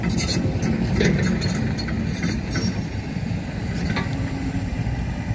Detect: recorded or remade recorded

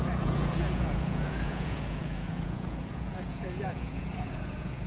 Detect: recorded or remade remade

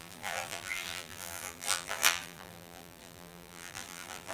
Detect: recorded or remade remade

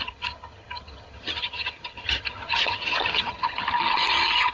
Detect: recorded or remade remade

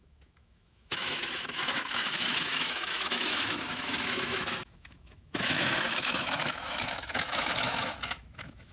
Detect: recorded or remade remade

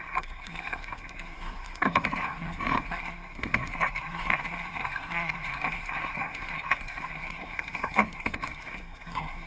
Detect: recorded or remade remade